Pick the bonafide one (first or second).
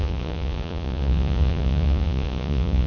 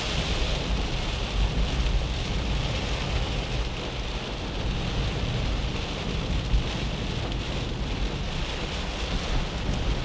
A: second